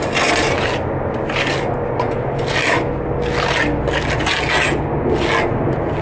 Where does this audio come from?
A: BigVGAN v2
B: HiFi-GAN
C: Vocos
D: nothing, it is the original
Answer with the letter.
D